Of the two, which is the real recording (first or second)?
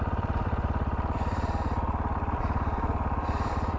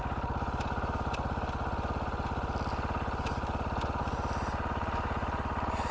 second